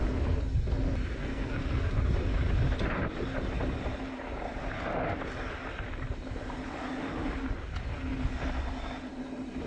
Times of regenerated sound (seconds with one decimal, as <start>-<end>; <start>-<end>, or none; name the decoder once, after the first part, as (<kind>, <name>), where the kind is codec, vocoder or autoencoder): 1.2-1.9 (codec, SNAC)